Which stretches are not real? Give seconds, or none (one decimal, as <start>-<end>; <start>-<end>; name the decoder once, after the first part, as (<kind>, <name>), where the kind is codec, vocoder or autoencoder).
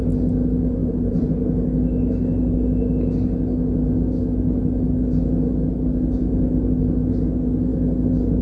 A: 0.8-1.3 (vocoder, BigVGAN v2)